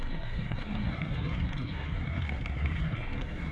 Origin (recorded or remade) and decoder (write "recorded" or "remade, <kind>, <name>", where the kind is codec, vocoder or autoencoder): remade, codec, SNAC